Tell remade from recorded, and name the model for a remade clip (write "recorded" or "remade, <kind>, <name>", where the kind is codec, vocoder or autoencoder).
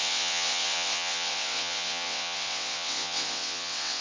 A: remade, vocoder, WaveNeXt